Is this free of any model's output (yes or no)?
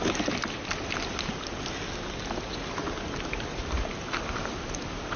yes